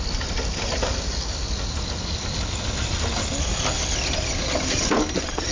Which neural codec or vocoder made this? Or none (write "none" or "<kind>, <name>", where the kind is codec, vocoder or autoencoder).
none